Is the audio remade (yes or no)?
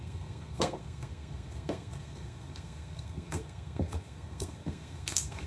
yes